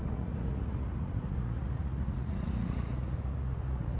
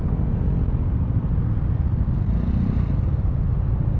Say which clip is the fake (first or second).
first